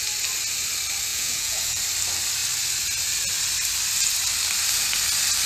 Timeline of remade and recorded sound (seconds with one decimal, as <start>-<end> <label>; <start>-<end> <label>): 0.0-1.1 recorded; 1.1-1.8 remade; 1.8-5.5 recorded